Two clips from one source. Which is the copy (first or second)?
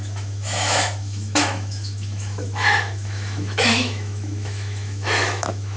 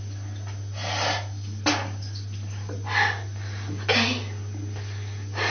first